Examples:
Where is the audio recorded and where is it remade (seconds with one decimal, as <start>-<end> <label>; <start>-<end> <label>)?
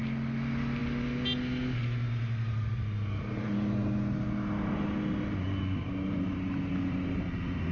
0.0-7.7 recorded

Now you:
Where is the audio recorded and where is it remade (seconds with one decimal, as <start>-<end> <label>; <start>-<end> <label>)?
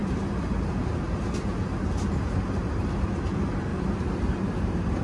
0.0-0.7 recorded; 0.7-1.5 remade; 1.5-2.1 recorded; 2.1-3.7 remade; 3.7-4.3 recorded; 4.3-5.0 remade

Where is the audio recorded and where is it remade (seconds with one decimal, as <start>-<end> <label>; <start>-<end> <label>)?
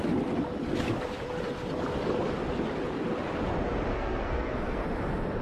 0.0-3.9 recorded; 3.9-4.8 remade; 4.8-5.4 recorded